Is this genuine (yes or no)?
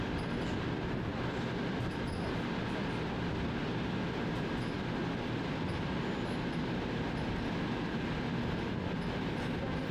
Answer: yes